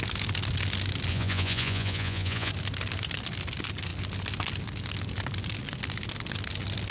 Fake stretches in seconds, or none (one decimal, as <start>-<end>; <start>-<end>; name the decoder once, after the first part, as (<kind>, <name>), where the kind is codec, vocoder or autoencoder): 1.1-2.5 (vocoder, Vocos)